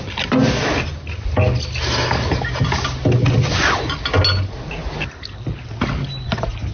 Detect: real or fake real